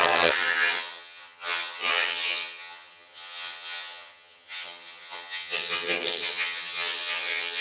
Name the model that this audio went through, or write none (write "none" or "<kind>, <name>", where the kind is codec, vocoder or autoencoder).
vocoder, HiFi-GAN